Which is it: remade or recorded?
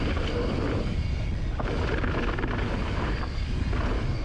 recorded